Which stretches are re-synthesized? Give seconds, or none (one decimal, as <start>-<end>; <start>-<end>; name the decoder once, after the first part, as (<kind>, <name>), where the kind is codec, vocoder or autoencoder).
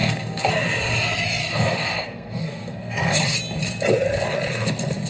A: 0.0-0.5 (codec, SNAC); 1.4-3.2